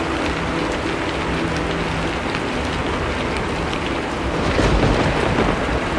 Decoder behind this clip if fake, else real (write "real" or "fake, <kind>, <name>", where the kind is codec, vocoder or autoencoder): real